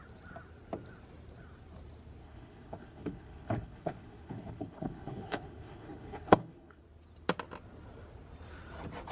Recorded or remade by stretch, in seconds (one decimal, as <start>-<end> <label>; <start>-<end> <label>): 0.0-2.2 recorded; 2.2-6.8 remade; 6.8-9.1 recorded